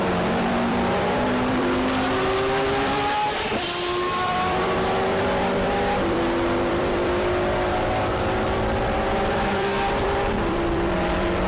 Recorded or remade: remade